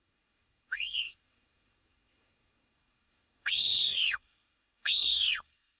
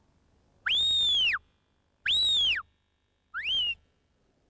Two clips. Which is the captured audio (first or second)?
second